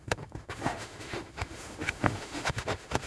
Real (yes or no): no